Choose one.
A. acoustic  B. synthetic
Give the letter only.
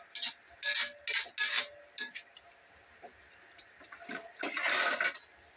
A